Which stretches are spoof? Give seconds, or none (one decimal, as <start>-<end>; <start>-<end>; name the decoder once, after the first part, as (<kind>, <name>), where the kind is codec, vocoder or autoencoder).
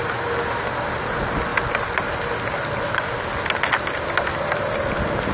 none